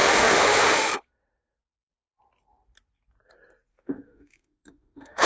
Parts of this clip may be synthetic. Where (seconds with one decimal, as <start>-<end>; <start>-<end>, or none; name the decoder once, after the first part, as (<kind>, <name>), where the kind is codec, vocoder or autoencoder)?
0.0-0.9 (autoencoder, DAC-VAE); 3.7-5.3